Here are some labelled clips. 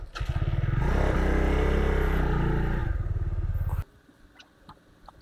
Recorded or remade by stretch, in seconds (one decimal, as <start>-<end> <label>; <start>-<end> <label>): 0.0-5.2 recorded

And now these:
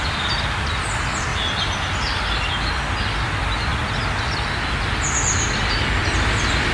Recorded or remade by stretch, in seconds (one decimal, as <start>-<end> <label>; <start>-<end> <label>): 0.0-6.7 recorded

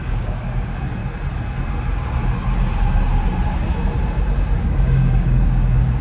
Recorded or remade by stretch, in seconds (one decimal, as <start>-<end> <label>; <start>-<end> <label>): 0.0-1.0 remade; 1.0-4.6 recorded; 4.6-6.0 remade

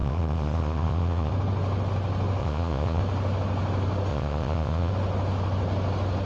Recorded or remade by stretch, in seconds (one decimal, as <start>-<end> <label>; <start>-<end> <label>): 0.0-1.3 remade; 1.3-2.4 recorded; 2.4-3.0 remade; 3.0-4.1 recorded; 4.1-4.9 remade; 4.9-6.3 recorded

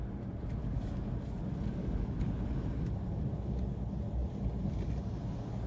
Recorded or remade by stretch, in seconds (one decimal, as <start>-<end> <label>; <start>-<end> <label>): 0.0-0.6 recorded; 0.6-1.1 remade; 1.1-1.8 recorded; 1.8-2.4 remade; 2.4-5.7 recorded